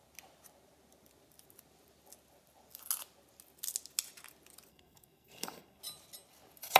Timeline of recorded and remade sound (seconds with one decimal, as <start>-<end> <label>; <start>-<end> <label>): 0.0-4.7 recorded; 4.7-5.8 remade; 5.8-6.8 recorded